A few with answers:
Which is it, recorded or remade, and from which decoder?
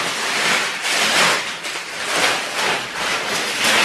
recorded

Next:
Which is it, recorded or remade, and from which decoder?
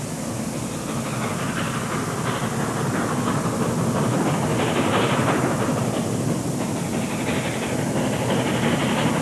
recorded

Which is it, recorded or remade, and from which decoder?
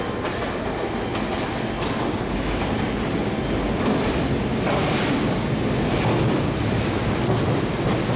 recorded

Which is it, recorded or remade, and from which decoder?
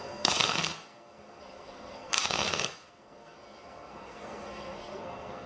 remade, codec, SNAC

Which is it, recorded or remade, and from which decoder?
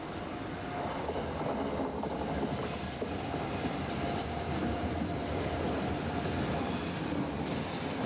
recorded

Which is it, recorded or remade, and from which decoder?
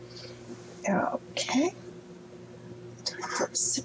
recorded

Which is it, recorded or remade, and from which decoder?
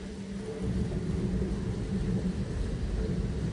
recorded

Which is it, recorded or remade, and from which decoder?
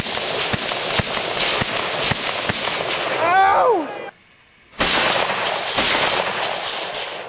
recorded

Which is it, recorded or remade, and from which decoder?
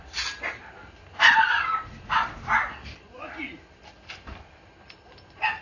recorded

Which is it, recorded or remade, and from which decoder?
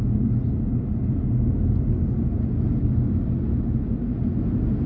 recorded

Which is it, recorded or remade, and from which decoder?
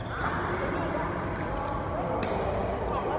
recorded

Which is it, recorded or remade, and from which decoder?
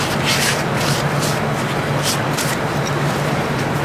recorded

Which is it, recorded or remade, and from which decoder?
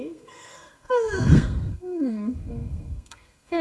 remade, codec, SNAC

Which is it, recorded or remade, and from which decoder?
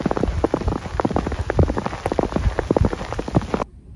recorded